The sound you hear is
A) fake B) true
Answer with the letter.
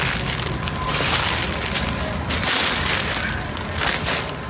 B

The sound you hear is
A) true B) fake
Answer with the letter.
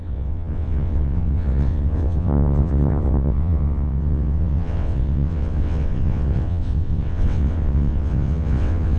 B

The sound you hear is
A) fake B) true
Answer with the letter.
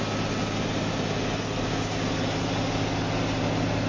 B